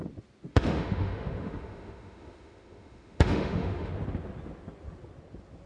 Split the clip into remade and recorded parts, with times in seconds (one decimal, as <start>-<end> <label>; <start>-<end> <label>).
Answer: 0.0-0.5 recorded; 0.5-3.9 remade; 3.9-5.7 recorded